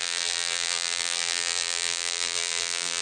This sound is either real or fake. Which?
fake